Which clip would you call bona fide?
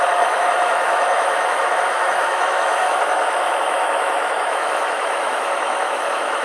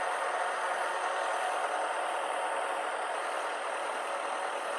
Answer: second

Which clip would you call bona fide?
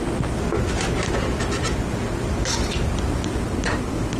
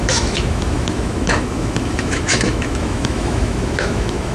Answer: first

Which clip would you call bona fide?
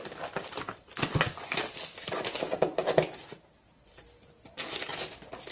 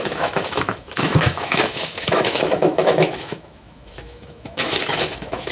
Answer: first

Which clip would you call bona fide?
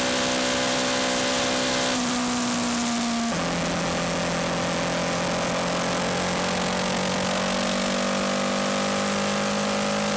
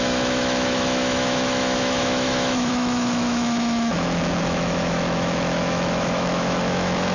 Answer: first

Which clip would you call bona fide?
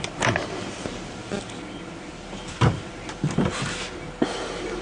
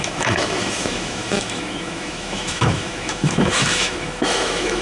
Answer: first